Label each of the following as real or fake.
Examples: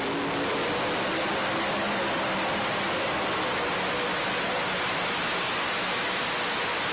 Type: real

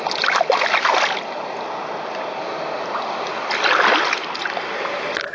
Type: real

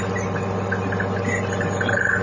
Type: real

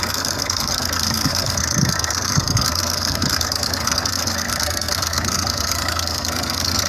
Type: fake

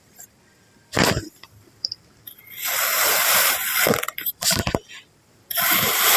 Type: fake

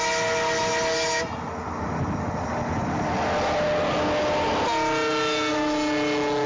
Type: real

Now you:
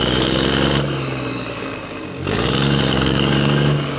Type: fake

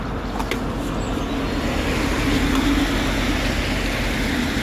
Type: real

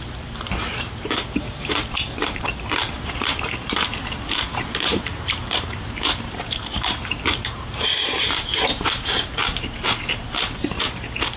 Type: fake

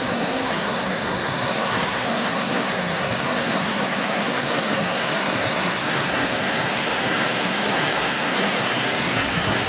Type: fake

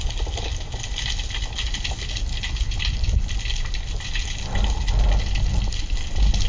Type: real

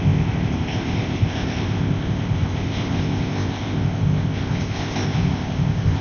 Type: fake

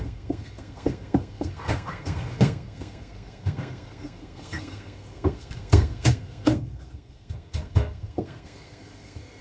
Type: fake